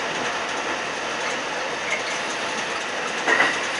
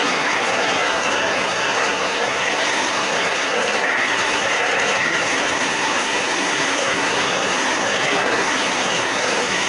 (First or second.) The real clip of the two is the first